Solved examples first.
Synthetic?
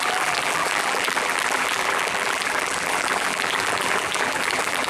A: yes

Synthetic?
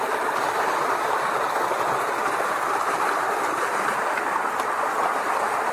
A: no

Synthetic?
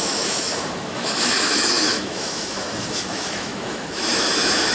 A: yes